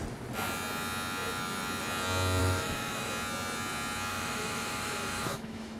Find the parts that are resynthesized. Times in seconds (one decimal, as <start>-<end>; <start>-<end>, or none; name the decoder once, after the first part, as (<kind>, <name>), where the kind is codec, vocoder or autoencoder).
2.4-3.1 (autoencoder, DAC-VAE); 4.1-5.8